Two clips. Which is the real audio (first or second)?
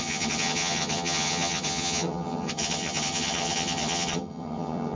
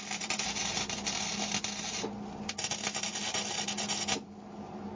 second